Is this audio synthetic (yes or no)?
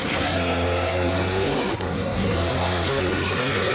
yes